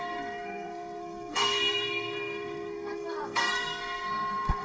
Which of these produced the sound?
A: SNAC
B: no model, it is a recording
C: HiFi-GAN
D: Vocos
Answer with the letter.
A